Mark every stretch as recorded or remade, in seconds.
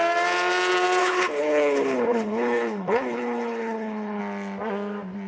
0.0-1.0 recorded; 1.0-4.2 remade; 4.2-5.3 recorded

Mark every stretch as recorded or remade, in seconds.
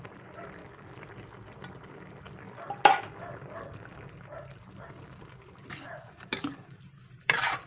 0.0-0.6 remade; 0.6-4.9 recorded; 4.9-7.7 remade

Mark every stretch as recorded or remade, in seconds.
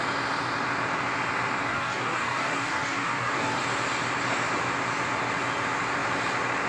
0.0-1.7 recorded; 1.7-3.6 remade; 3.6-6.7 recorded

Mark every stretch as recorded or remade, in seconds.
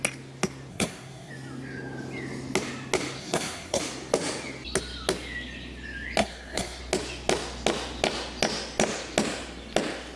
0.0-0.7 recorded; 0.7-1.3 remade; 1.3-3.2 recorded; 3.2-3.8 remade; 3.8-6.2 recorded; 6.2-6.8 remade; 6.8-10.2 recorded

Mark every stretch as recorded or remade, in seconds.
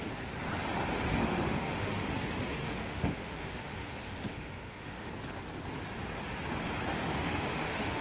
0.0-1.2 recorded; 1.2-2.1 remade; 2.1-2.6 recorded; 2.6-5.1 remade; 5.1-6.9 recorded; 6.9-8.0 remade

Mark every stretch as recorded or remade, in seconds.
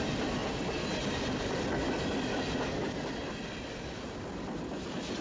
0.0-0.4 remade; 0.4-3.5 recorded; 3.5-5.2 remade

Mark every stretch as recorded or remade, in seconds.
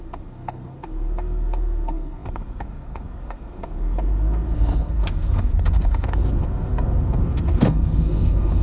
0.0-8.6 remade